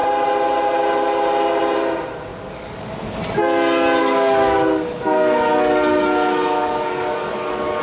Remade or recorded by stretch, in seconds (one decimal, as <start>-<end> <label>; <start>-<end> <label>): 0.0-2.3 recorded; 2.3-2.9 remade; 2.9-4.0 recorded; 4.0-7.8 remade